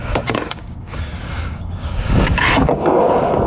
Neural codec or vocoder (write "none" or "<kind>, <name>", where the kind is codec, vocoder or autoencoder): codec, DAC